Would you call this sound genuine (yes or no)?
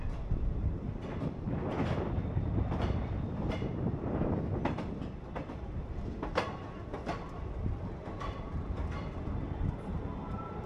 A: yes